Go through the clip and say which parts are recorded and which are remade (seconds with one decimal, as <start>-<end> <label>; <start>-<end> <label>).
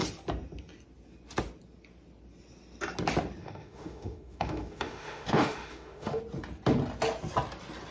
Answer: 0.0-3.4 recorded; 3.4-6.2 remade; 6.2-7.9 recorded